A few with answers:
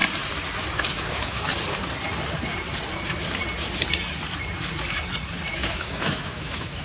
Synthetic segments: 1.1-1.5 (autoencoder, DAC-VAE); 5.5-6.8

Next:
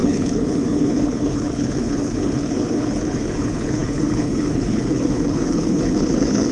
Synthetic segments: 0.0-6.5 (codec, HILCodec)

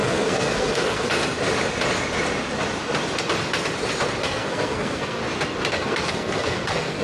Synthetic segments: 0.0-1.1 (codec, SNAC); 4.2-5.2; 5.7-7.0